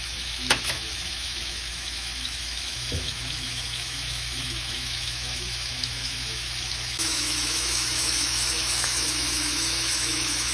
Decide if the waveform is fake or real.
fake